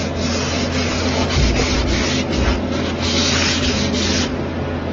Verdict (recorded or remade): recorded